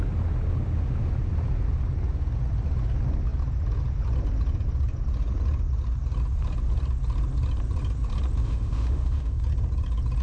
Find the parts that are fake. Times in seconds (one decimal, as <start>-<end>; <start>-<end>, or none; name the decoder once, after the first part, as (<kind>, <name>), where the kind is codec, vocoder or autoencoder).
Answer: 8.4-9.4 (autoencoder, DAC-VAE)